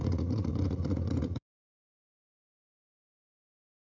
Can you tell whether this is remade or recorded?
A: remade